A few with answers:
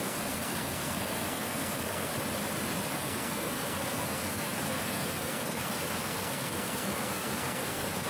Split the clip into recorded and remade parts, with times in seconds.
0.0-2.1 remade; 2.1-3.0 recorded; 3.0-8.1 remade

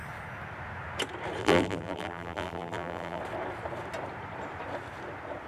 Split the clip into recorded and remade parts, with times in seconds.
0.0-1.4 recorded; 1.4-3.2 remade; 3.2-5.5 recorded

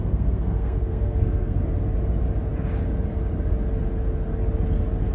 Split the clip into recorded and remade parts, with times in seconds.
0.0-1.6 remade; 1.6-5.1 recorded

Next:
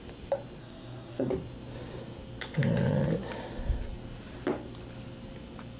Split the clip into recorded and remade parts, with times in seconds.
0.0-0.6 recorded; 0.6-1.3 remade; 1.3-5.8 recorded